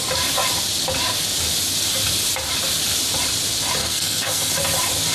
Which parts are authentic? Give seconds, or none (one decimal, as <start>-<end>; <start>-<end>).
0.0-3.8; 4.5-5.1